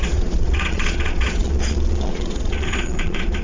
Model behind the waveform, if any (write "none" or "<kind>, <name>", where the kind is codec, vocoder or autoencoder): vocoder, Vocos